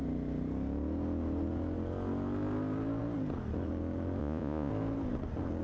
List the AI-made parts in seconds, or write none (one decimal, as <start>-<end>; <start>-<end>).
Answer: 4.2-4.7